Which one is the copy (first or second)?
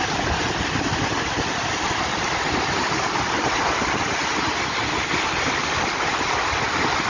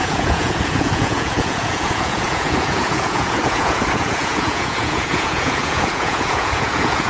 second